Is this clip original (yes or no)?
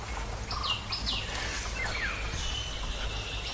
yes